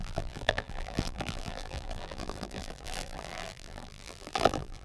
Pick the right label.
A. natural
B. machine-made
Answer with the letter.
B